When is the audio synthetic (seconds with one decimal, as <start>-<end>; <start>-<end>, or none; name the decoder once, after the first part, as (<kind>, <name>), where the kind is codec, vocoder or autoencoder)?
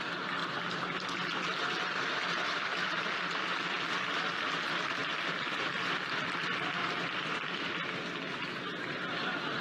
0.4-1.8 (vocoder, BigVGAN v2); 6.8-7.9